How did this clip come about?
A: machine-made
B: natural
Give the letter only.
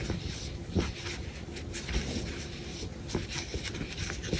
B